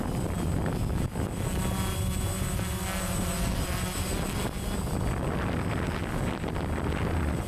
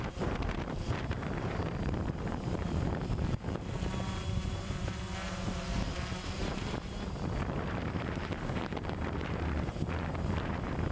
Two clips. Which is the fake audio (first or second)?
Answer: second